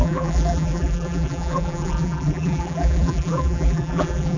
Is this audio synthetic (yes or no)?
yes